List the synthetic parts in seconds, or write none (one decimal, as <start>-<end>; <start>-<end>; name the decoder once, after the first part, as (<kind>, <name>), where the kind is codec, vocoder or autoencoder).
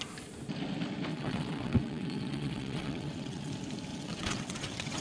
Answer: 1.1-3.5 (vocoder, WaveNeXt); 3.9-5.0